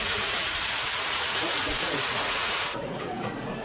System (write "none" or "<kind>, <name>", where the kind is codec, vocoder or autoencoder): vocoder, Vocos